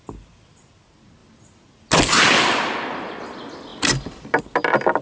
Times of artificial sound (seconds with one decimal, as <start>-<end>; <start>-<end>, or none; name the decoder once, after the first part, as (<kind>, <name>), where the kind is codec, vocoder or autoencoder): none